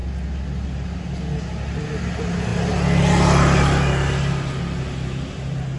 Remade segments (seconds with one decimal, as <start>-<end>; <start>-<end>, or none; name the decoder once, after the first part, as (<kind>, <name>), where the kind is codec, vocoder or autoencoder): none

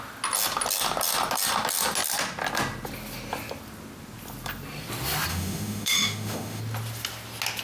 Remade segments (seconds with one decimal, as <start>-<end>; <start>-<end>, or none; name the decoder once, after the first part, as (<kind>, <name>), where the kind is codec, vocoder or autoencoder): 5.3-6.6 (autoencoder, DAC-VAE)

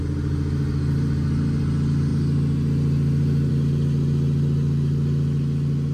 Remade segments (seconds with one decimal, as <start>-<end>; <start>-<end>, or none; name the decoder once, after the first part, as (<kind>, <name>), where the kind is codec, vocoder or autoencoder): none

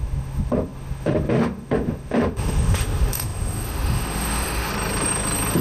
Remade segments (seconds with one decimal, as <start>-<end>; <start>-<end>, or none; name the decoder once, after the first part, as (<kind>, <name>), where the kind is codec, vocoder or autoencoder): 0.0-4.7 (autoencoder, DAC-VAE)

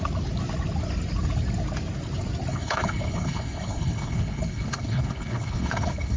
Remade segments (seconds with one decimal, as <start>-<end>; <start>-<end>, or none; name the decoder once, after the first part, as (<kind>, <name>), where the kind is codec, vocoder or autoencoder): 2.5-6.2 (codec, HILCodec)

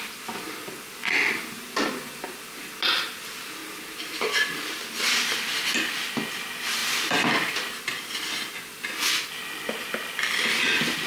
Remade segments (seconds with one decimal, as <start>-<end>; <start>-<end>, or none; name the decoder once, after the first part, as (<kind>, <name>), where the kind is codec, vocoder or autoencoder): 3.6-4.9 (vocoder, BigVGAN v2)

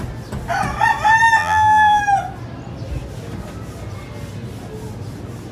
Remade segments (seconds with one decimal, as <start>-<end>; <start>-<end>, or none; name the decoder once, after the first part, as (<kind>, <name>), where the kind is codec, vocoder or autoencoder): 1.4-2.0 (vocoder, BigVGAN v2)